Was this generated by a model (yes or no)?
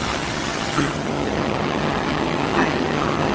yes